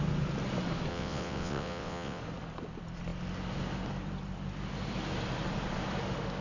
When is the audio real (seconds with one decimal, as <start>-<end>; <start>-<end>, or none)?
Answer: 0.0-0.9; 2.2-6.4